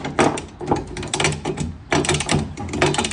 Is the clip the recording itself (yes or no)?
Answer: yes